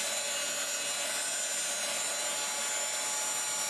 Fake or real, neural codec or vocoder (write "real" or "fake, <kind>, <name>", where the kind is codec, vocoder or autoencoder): real